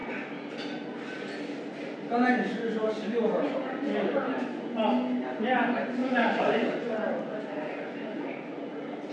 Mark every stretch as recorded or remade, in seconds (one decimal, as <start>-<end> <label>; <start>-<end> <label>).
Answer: 0.0-2.8 recorded; 2.8-4.2 remade; 4.2-6.0 recorded; 6.0-6.5 remade; 6.5-9.1 recorded